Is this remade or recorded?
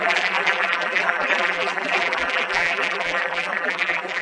remade